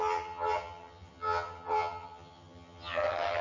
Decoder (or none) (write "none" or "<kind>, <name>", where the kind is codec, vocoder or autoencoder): vocoder, HiFi-GAN